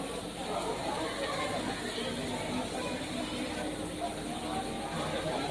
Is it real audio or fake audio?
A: real